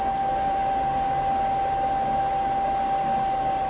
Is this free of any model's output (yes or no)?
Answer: yes